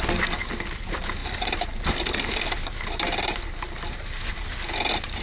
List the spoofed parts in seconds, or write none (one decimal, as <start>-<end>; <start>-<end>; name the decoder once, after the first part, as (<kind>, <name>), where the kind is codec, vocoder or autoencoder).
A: none